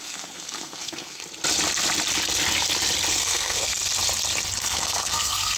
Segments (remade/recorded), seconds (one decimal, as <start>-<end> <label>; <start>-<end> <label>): 0.0-1.2 remade; 1.2-3.1 recorded; 3.1-3.8 remade; 3.8-4.6 recorded; 4.6-5.6 remade